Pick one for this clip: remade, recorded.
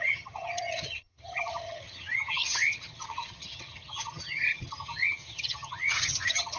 remade